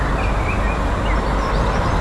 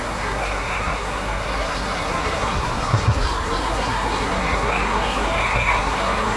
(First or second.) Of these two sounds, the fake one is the second